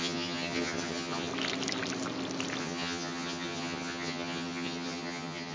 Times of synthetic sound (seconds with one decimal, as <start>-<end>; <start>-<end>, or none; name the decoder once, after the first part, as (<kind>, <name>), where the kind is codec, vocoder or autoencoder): 0.0-1.3 (vocoder, HiFi-GAN); 2.6-5.5